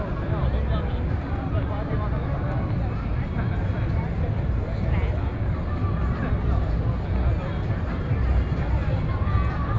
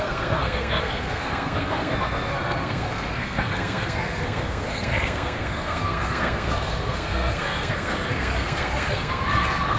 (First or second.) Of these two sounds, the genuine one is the first